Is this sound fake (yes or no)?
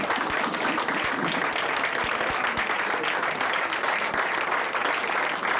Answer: no